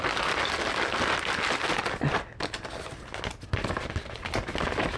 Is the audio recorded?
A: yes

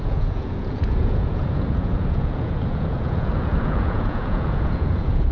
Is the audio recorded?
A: no